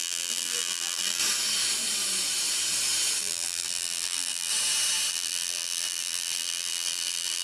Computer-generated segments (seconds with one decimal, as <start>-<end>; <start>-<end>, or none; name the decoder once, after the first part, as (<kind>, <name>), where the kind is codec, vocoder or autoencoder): 0.0-1.2 (vocoder, BigVGAN v2); 3.2-4.5; 5.1-7.4